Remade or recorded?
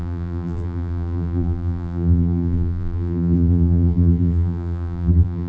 remade